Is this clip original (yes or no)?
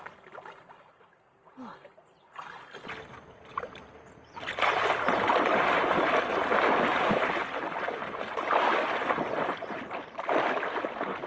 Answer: yes